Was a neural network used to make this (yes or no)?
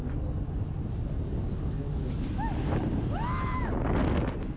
no